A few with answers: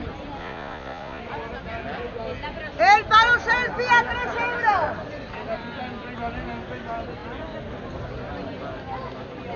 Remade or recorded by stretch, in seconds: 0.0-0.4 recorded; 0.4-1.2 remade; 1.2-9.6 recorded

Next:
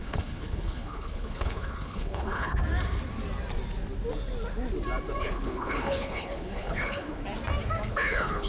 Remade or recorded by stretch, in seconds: 0.0-2.6 remade; 2.6-5.2 recorded; 5.2-7.2 remade; 7.2-7.9 recorded; 7.9-8.5 remade

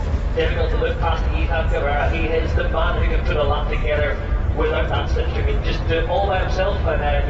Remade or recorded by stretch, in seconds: 0.0-1.9 recorded; 1.9-2.6 remade; 2.6-3.8 recorded; 3.8-5.5 remade; 5.5-7.3 recorded

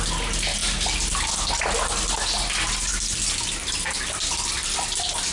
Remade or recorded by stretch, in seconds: 0.0-5.3 recorded

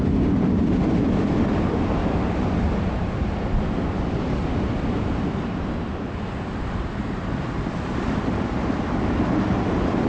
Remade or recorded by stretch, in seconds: 0.0-10.1 recorded

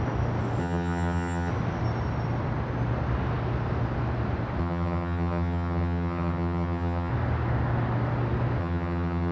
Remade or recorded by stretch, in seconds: 0.0-0.6 recorded; 0.6-1.5 remade; 1.5-4.6 recorded; 4.6-7.1 remade; 7.1-8.6 recorded; 8.6-9.3 remade

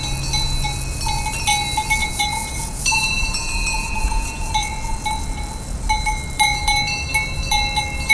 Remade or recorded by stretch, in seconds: 0.0-2.0 recorded; 2.0-4.5 remade; 4.5-8.1 recorded